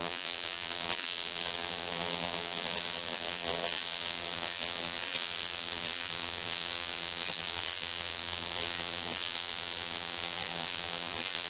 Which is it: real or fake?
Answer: fake